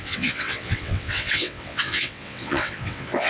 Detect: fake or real fake